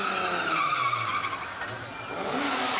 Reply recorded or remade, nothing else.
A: recorded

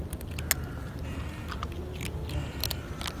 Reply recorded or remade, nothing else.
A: recorded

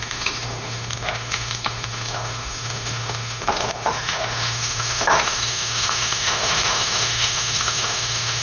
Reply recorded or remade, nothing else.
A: remade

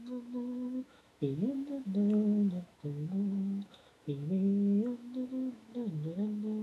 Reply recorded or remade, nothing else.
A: remade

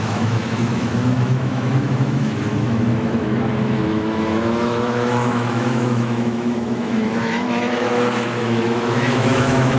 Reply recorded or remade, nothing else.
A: remade